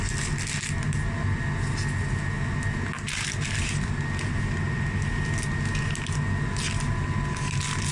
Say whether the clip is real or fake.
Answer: real